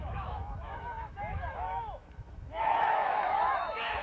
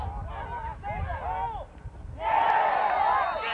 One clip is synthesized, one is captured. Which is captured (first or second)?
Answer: second